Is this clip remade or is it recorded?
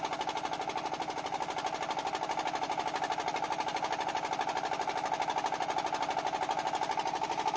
recorded